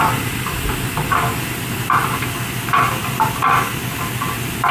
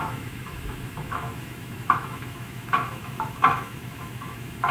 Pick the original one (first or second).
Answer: first